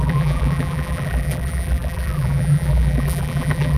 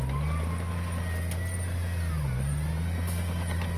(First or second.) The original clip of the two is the second